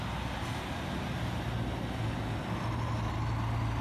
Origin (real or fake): real